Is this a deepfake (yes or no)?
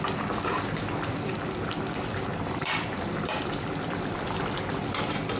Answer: yes